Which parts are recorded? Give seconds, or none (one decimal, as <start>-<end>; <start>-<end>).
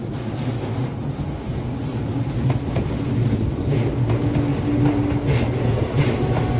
0.0-6.6